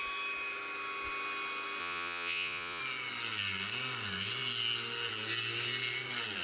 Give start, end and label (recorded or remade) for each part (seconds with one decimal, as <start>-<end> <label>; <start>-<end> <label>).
0.0-1.8 recorded; 1.8-2.8 remade; 2.8-6.4 recorded